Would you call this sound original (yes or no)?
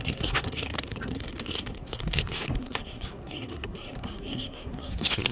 no